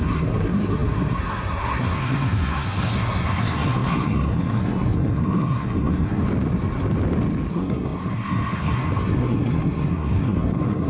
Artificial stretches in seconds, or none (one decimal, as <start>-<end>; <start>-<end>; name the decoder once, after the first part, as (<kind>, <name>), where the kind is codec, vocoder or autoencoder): 0.0-6.2 (codec, SNAC); 7.5-10.9